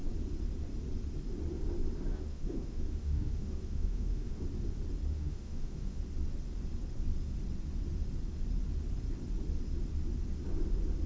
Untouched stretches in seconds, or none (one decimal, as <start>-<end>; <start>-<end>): 0.0-2.1; 4.4-5.1; 6.0-11.1